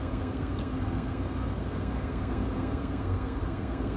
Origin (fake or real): fake